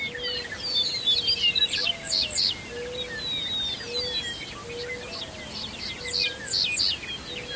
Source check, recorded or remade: recorded